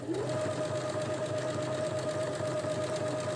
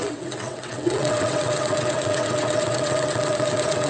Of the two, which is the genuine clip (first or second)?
first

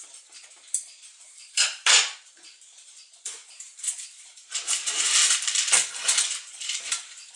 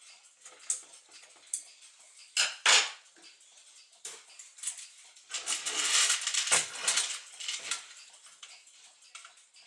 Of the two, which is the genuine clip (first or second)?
second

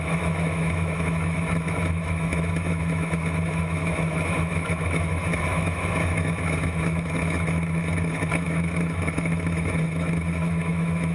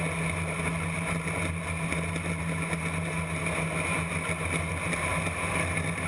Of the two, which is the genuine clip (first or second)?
second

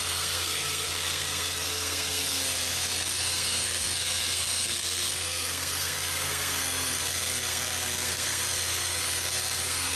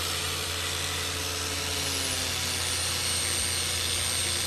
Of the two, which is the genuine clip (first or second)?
second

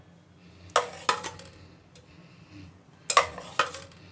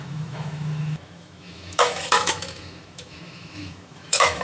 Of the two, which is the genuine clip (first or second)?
first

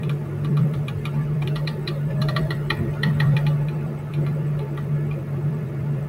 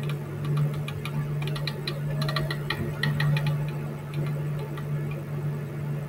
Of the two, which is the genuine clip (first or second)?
second